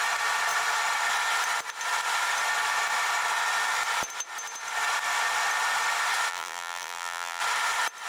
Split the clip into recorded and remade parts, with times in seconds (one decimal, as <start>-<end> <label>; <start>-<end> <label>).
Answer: 0.0-6.3 recorded; 6.3-7.4 remade; 7.4-8.1 recorded